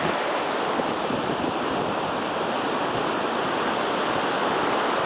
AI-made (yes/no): no